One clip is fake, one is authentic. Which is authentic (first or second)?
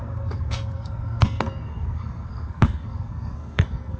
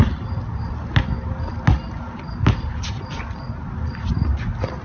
second